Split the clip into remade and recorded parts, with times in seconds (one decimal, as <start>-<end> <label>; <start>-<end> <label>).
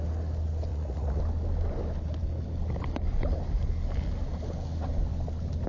0.0-0.7 recorded; 0.7-1.2 remade; 1.2-5.7 recorded